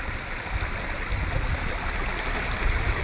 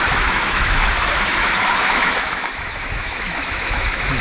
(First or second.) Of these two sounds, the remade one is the second